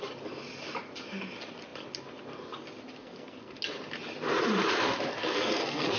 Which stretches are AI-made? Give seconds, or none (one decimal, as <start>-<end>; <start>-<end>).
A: 3.0-3.6; 5.2-6.0